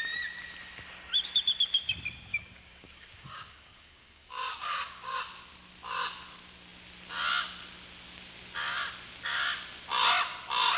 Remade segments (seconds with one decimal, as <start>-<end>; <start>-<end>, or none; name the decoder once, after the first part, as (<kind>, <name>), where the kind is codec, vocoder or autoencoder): 2.3-5.2 (codec, DAC)

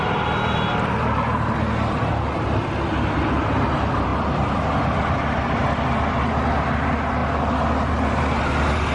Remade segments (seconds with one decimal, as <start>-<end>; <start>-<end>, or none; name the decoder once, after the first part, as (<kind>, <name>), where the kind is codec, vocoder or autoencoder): none

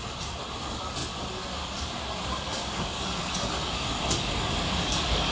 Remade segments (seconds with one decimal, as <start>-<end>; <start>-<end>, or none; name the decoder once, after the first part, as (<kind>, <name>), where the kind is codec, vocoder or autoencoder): 2.3-5.3 (codec, DAC)

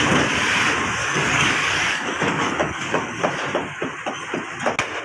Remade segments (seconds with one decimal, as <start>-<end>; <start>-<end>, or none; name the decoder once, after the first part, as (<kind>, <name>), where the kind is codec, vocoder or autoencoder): 1.0-3.2 (codec, DAC)